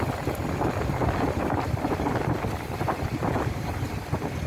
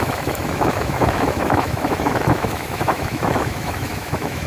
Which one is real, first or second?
first